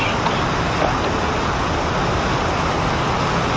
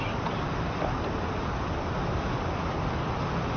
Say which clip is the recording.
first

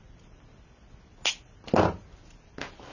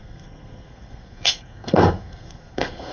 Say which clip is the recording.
first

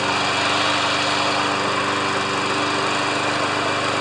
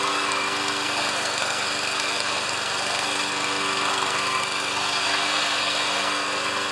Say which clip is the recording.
first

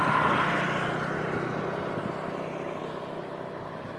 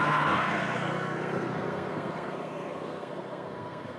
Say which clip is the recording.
first